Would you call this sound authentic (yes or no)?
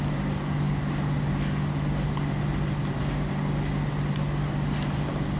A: yes